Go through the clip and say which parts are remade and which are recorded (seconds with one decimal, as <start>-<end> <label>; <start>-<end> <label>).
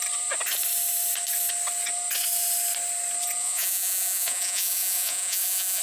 0.0-3.4 recorded; 3.4-5.8 remade